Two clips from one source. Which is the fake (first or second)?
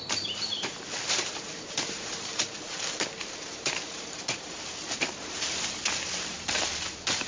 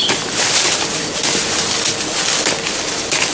first